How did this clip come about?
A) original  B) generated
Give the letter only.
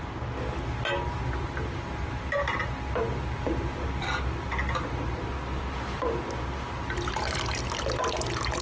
A